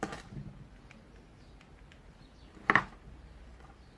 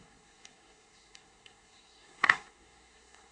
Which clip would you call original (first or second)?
first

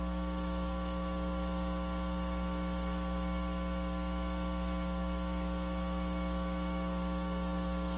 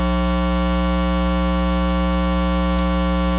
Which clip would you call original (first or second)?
second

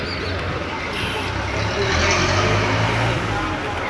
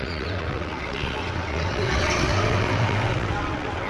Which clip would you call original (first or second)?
first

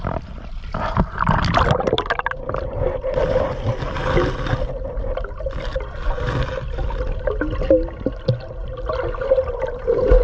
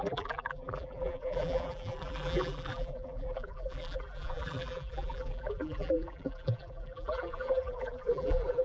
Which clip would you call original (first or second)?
first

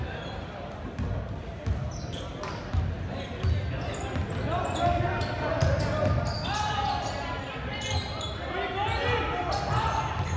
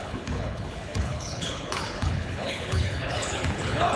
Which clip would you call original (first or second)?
first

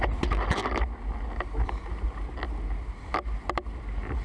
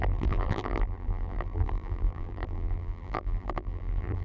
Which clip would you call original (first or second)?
first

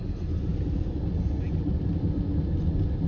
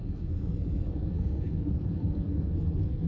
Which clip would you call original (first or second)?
first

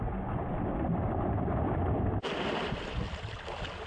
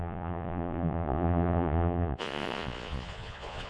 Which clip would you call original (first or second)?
first